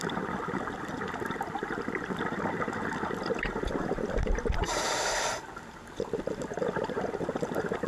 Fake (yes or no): no